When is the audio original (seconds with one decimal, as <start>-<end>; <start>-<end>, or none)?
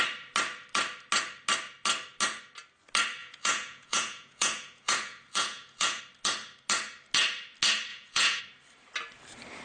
0.0-3.2; 6.0-7.9; 8.4-9.6